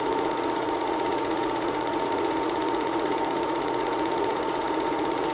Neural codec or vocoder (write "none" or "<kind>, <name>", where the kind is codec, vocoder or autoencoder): vocoder, Vocos